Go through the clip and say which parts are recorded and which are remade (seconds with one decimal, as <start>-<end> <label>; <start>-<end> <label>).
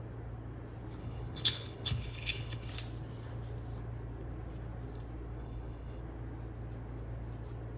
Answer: 0.0-1.0 recorded; 1.0-2.7 remade; 2.7-5.4 recorded; 5.4-6.0 remade; 6.0-7.8 recorded